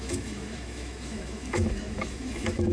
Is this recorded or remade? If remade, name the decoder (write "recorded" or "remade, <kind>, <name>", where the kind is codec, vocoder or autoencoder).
remade, autoencoder, DAC-VAE